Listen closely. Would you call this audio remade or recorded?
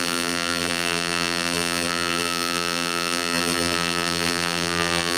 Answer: remade